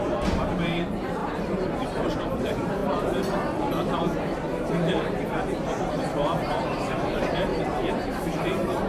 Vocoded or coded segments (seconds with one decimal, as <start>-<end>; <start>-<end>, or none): 0.0-2.8; 4.7-8.9